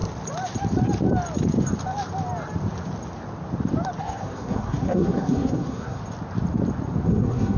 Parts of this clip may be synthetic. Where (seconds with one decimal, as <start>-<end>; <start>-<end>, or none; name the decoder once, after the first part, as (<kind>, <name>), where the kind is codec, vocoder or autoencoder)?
4.0-6.0 (codec, SNAC); 7.1-7.6